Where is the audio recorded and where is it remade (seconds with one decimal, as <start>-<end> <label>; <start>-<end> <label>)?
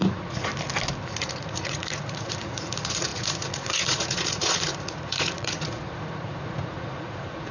0.0-0.5 remade; 0.5-1.2 recorded; 1.2-7.5 remade